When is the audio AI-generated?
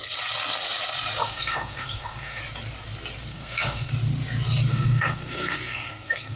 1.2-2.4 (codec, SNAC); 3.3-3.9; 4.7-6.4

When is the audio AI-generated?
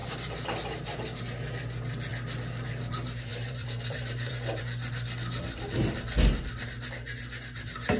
0.0-1.2 (vocoder, BigVGAN v2); 3.3-4.6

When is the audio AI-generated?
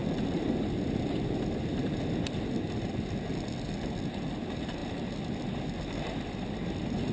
none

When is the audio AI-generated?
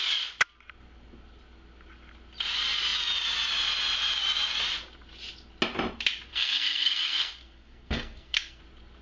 6.3-8.6 (codec, SNAC)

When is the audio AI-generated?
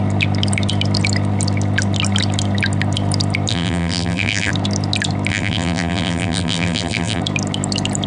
3.5-4.5 (vocoder, BigVGAN v2); 5.3-7.2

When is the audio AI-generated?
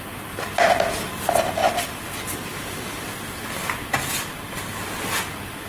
none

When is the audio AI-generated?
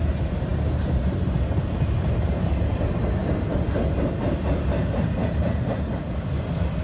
none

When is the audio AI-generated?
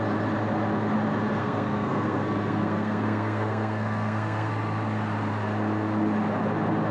1.4-4.5 (codec, SNAC)